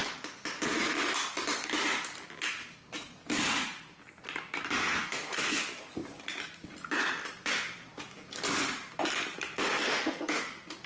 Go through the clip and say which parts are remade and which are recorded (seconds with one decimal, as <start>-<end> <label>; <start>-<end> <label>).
0.0-4.9 recorded; 4.9-5.6 remade; 5.6-9.9 recorded; 9.9-10.4 remade; 10.4-10.9 recorded